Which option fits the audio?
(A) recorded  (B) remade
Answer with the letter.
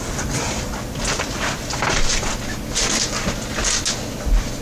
A